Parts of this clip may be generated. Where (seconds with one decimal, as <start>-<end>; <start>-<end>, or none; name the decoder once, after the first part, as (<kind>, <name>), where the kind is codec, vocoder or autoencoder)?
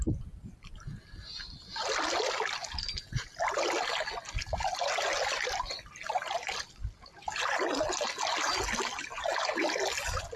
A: none